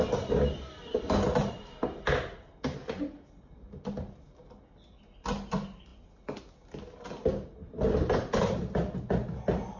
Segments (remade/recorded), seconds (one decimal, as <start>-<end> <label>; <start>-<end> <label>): 0.0-9.8 recorded